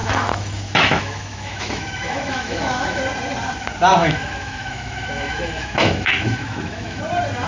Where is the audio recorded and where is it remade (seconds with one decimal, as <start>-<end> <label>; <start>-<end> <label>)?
0.0-3.0 remade; 3.0-4.0 recorded; 4.0-7.0 remade; 7.0-7.5 recorded